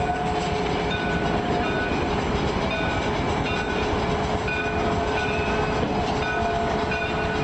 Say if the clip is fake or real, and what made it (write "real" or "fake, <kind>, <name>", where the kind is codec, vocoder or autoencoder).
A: real